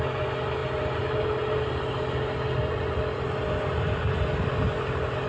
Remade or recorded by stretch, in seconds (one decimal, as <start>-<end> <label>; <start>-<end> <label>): 0.0-5.3 recorded